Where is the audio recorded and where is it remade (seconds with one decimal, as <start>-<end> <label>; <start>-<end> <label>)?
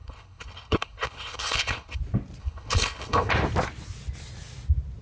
0.0-2.0 remade; 2.0-2.4 recorded; 2.4-3.3 remade; 3.3-5.0 recorded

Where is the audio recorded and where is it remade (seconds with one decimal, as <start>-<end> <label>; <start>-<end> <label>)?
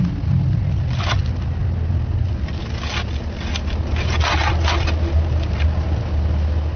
0.0-6.8 recorded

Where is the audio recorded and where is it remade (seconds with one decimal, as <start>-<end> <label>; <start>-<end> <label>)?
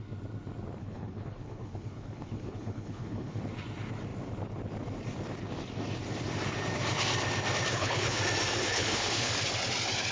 0.0-0.8 recorded; 0.8-3.4 remade; 3.4-7.7 recorded; 7.7-8.2 remade; 8.2-8.6 recorded; 8.6-9.3 remade; 9.3-10.1 recorded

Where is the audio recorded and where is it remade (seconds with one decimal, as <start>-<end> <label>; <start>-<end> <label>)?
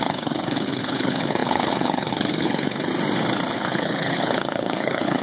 0.0-2.9 remade; 2.9-3.5 recorded; 3.5-5.2 remade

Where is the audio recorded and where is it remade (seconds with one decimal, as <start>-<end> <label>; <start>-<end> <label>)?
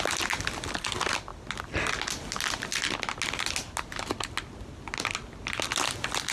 0.0-6.3 recorded